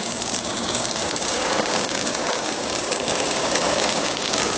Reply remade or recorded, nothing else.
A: remade